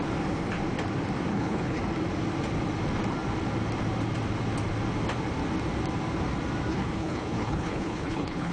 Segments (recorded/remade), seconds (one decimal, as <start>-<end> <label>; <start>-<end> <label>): 0.0-1.3 recorded; 1.3-1.8 remade; 1.8-6.7 recorded; 6.7-8.5 remade